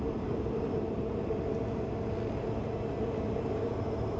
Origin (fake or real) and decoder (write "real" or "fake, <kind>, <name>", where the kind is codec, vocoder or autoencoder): real